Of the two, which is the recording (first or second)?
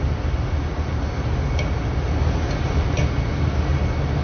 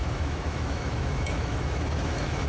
first